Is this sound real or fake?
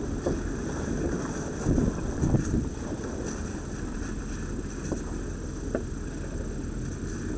real